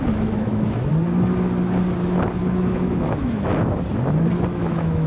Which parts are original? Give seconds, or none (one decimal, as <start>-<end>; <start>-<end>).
0.9-2.4; 3.5-4.4